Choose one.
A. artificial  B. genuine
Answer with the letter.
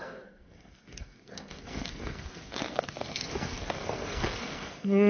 A